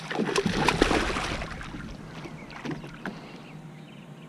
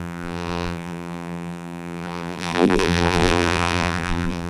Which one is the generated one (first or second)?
second